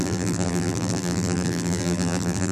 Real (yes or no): no